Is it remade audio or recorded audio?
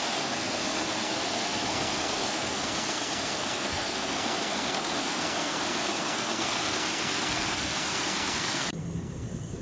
remade